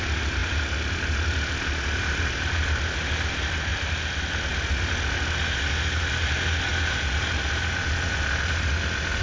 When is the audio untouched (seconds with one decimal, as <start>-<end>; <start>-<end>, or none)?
0.0-9.2